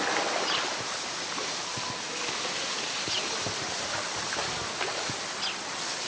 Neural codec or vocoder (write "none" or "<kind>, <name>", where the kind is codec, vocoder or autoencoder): none